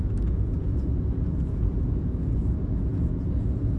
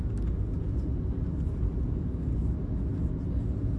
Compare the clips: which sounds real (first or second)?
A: second